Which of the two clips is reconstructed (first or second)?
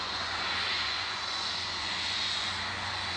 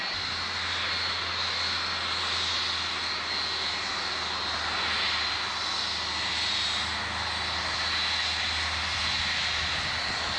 first